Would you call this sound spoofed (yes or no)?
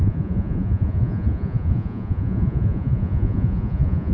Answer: yes